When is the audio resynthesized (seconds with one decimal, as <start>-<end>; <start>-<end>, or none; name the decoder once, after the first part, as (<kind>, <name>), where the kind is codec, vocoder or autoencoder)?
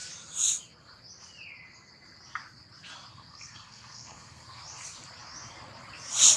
3.1-4.6 (codec, SNAC)